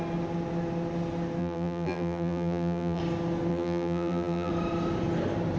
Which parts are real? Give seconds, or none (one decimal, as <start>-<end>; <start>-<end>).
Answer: 0.0-1.4; 3.0-3.5; 4.5-5.6